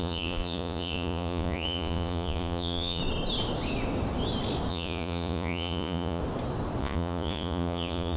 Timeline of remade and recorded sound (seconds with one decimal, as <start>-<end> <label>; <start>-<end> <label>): 0.0-3.0 remade; 3.0-4.7 recorded; 4.7-6.2 remade; 6.2-6.8 recorded; 6.8-8.2 remade